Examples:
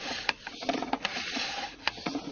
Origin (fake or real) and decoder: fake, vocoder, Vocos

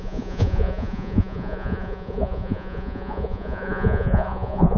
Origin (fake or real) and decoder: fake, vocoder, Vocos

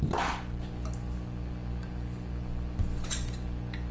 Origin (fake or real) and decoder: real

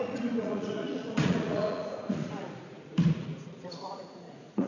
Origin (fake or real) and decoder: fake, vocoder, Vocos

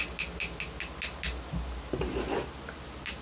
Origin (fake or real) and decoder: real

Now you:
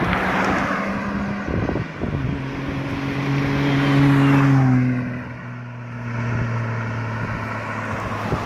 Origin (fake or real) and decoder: real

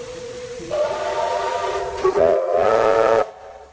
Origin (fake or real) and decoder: fake, vocoder, Vocos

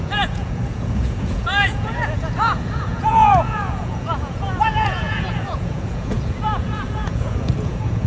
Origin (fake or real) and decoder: fake, vocoder, Vocos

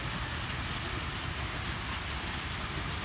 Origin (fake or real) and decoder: real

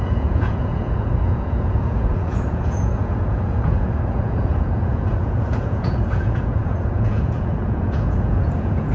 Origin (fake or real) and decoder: fake, vocoder, Vocos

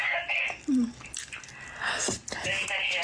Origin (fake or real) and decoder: real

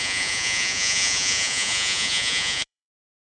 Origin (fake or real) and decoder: fake, vocoder, Vocos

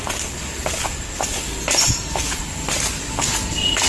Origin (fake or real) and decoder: real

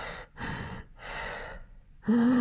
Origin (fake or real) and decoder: fake, vocoder, Vocos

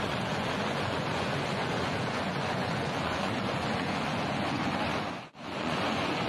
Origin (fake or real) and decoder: fake, vocoder, Vocos